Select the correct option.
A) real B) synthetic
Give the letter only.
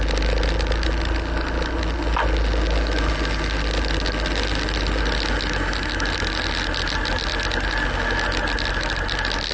A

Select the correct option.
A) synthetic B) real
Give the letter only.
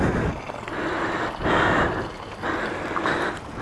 B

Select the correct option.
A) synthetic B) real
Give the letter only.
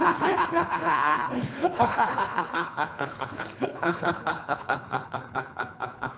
A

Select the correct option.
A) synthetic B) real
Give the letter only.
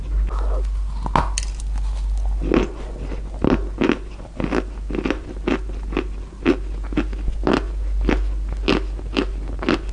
B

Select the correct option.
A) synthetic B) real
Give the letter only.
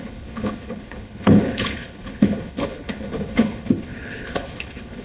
A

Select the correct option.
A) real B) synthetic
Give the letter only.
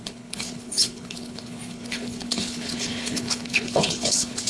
B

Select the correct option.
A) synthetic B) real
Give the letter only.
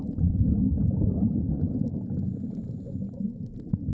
B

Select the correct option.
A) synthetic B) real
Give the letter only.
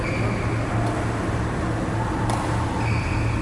B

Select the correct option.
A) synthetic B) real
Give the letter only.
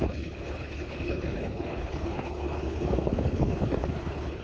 A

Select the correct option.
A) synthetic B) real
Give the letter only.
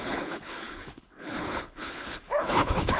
A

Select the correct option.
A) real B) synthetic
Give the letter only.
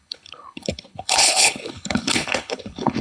B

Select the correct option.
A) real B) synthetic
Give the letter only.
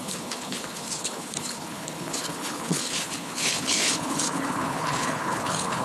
B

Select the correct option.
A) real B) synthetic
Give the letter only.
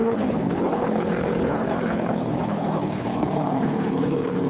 B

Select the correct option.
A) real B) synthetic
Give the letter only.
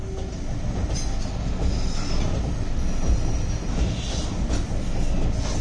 A